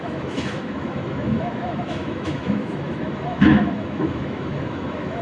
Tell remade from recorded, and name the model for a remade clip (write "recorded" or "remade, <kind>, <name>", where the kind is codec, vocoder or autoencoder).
remade, autoencoder, DAC-VAE